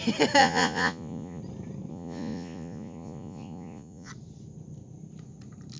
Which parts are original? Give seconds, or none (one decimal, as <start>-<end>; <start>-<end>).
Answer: 0.0-0.4; 1.4-1.9; 4.1-5.8